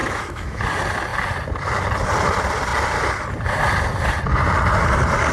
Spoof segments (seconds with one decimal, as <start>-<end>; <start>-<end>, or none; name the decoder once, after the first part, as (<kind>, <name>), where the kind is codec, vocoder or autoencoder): 0.0-0.6 (autoencoder, DAC-VAE)